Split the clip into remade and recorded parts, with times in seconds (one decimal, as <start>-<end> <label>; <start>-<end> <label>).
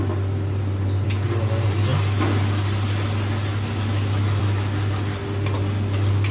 0.0-6.3 recorded